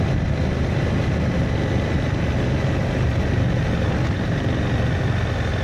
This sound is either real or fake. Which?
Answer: real